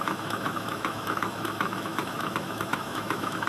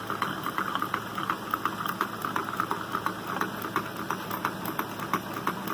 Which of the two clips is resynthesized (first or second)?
first